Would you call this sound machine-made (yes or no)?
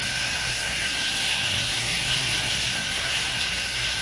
yes